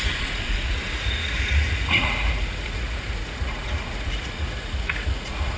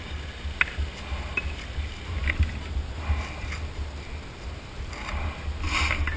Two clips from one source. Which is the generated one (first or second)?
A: first